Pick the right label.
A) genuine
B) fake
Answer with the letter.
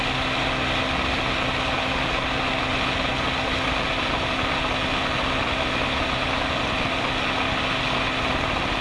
A